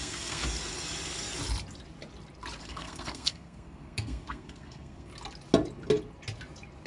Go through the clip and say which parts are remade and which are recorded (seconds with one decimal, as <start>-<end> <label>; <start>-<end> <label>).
0.0-0.4 remade; 0.4-2.6 recorded; 2.6-5.1 remade; 5.1-6.9 recorded